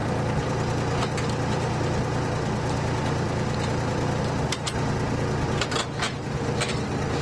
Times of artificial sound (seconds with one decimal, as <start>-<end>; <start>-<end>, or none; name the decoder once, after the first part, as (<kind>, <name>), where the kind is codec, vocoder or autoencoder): none